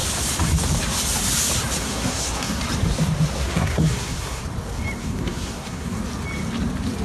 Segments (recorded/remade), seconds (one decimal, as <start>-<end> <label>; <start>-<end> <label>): 0.0-1.8 recorded; 1.8-2.6 remade; 2.6-3.4 recorded; 3.4-4.4 remade; 4.4-5.0 recorded; 5.0-6.0 remade; 6.0-7.0 recorded